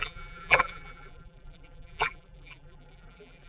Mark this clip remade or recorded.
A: remade